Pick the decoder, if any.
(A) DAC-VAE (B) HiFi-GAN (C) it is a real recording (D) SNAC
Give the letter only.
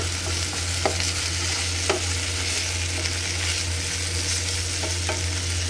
C